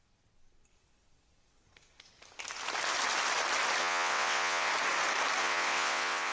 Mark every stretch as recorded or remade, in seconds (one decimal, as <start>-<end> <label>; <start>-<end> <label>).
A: 0.0-3.8 recorded; 3.8-4.7 remade; 4.7-5.4 recorded; 5.4-6.3 remade